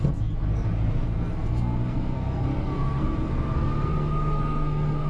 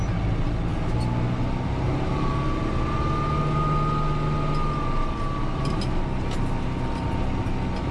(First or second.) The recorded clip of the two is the second